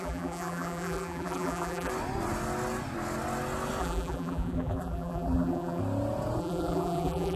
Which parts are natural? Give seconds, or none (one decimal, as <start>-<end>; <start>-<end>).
1.9-3.8; 5.8-6.4